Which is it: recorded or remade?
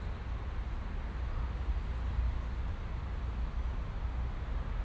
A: recorded